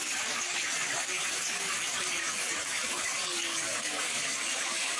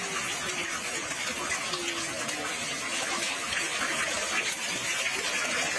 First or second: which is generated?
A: first